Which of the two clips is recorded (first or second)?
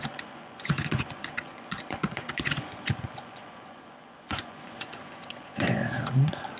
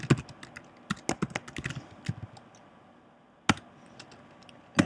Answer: second